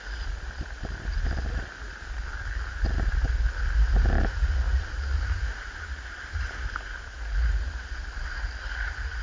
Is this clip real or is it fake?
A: real